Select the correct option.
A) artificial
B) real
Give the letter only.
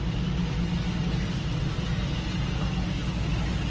B